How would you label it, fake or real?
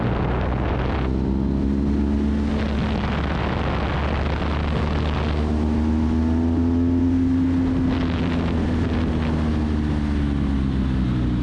real